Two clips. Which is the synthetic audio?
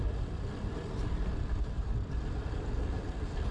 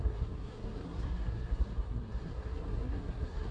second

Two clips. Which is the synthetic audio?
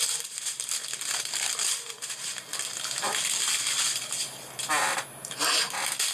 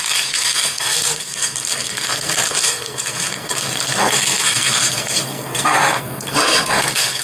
second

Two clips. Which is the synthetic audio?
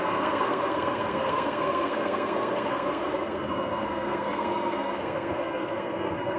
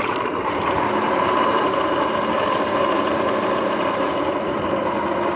first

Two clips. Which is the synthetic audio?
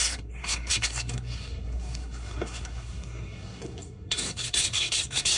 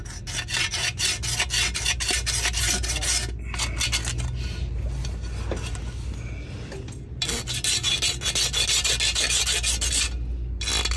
first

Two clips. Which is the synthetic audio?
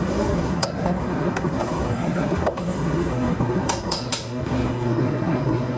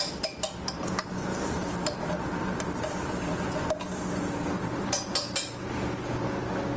first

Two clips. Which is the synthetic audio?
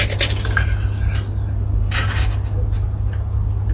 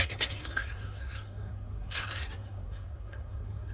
second